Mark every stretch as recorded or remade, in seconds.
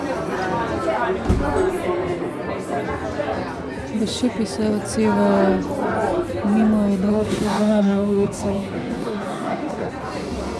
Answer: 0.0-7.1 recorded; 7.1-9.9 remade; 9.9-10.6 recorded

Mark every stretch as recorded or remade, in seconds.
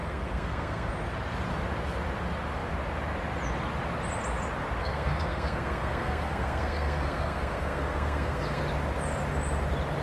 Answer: 0.0-0.9 remade; 0.9-4.8 recorded; 4.8-8.6 remade; 8.6-10.0 recorded